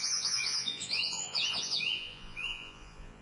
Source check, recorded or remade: remade